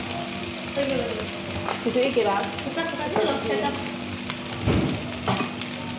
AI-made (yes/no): no